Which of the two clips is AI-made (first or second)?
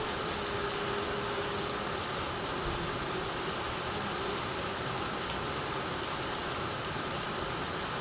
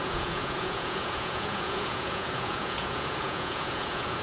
second